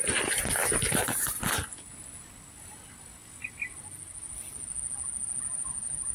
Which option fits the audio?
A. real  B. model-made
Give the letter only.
A